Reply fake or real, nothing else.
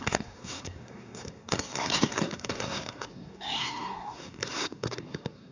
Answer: fake